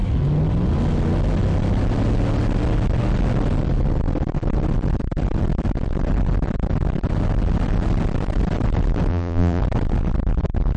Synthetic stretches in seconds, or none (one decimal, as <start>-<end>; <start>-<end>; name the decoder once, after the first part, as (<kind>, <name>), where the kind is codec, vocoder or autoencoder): 9.1-9.6 (vocoder, BigVGAN v2)